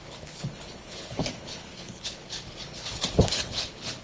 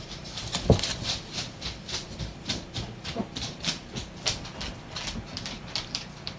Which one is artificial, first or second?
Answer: first